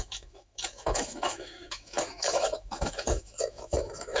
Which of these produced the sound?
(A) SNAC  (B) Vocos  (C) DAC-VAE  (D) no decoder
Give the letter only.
C